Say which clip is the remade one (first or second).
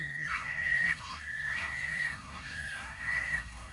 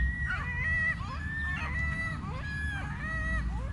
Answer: first